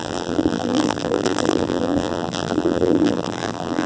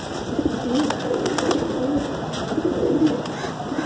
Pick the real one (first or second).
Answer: second